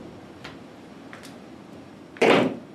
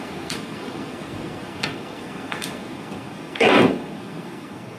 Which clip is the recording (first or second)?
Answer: first